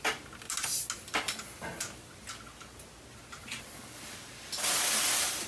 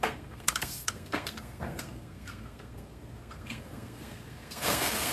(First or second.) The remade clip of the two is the second